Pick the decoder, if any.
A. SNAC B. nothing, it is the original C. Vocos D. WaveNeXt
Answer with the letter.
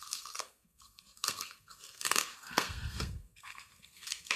A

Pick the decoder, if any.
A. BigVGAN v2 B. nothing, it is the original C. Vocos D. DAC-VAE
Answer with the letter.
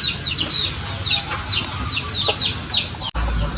B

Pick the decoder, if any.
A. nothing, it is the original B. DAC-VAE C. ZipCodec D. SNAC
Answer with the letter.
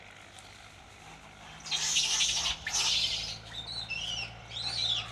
A